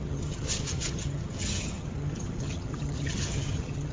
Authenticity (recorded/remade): remade